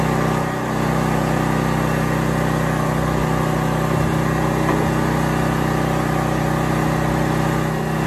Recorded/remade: recorded